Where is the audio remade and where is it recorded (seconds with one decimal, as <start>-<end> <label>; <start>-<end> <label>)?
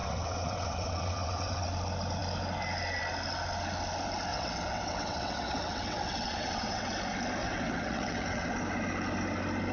0.0-1.7 remade; 1.7-4.3 recorded; 4.3-6.9 remade; 6.9-7.4 recorded; 7.4-8.5 remade; 8.5-9.7 recorded